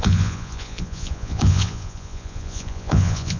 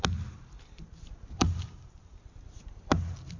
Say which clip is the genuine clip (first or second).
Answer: second